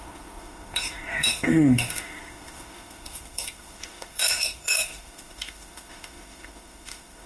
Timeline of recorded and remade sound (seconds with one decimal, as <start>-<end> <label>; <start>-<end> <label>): 0.0-7.3 remade